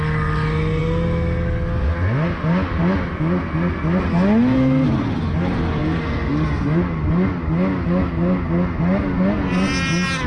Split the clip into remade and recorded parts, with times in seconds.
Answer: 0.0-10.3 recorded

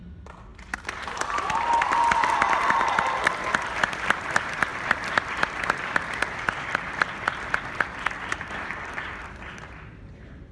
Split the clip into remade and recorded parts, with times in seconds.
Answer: 0.0-10.5 remade

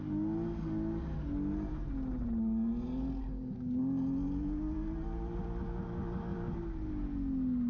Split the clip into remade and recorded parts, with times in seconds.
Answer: 0.0-7.7 recorded